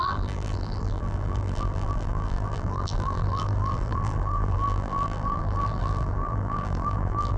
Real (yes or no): no